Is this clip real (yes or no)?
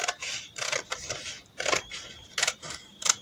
yes